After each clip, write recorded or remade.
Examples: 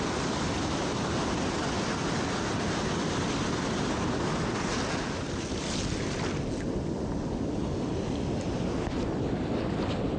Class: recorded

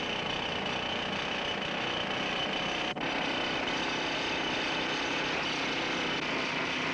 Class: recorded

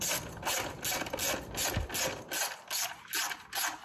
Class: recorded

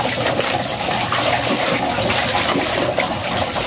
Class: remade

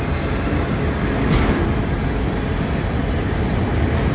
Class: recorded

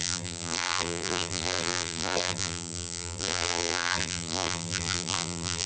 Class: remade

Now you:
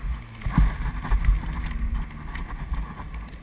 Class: recorded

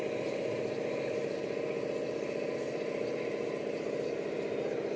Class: recorded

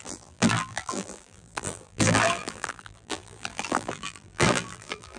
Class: remade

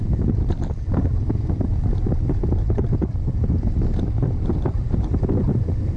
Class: remade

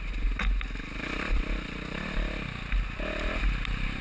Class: recorded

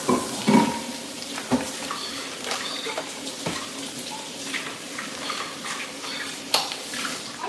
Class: remade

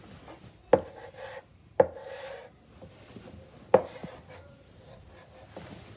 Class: recorded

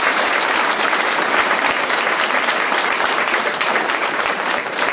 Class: remade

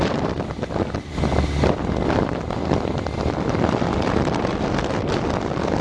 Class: remade